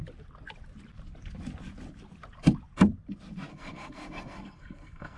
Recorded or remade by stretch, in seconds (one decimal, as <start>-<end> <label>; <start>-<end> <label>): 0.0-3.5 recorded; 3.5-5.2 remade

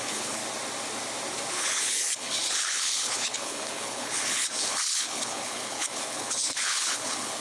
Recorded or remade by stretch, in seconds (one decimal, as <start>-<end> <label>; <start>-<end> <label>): 0.0-0.4 remade; 0.4-1.5 recorded; 1.5-7.4 remade

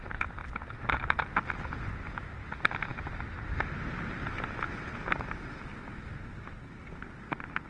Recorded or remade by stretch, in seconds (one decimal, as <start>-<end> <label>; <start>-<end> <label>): 0.0-7.7 recorded

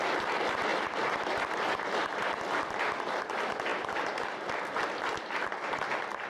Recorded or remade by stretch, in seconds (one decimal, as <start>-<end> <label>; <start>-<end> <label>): 0.0-6.3 recorded

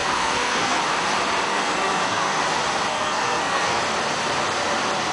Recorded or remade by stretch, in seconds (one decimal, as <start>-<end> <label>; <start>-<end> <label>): 0.0-0.8 remade; 0.8-1.5 recorded; 1.5-2.4 remade; 2.4-2.9 recorded; 2.9-3.8 remade; 3.8-5.1 recorded

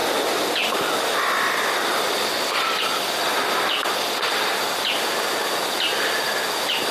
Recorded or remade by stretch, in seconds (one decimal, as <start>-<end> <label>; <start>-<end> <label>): 0.0-2.8 remade; 2.8-3.8 recorded; 3.8-4.4 remade; 4.4-6.9 recorded

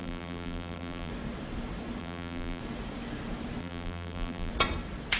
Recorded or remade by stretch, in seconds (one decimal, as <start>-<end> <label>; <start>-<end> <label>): 0.0-1.1 remade; 1.1-2.0 recorded; 2.0-2.6 remade; 2.6-3.6 recorded; 3.6-4.5 remade; 4.5-5.2 recorded